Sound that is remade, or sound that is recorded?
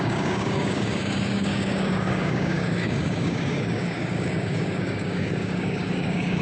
remade